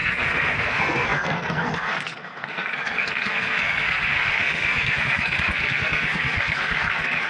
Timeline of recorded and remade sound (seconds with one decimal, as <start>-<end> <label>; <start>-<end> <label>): 0.0-7.3 remade